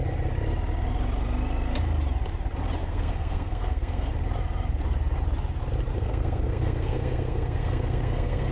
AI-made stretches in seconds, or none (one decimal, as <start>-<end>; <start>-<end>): 2.8-4.1; 5.9-8.5